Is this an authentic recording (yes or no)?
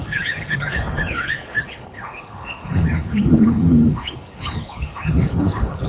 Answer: no